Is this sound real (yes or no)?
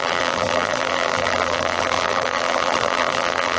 no